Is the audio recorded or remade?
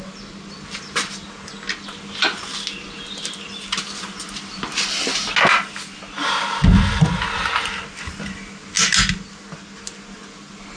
recorded